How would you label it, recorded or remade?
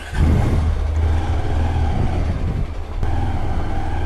recorded